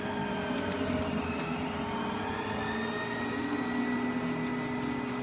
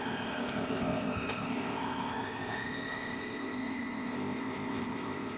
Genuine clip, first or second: first